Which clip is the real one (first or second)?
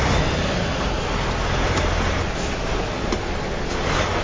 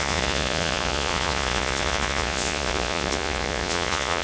first